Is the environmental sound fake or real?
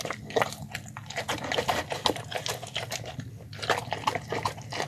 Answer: real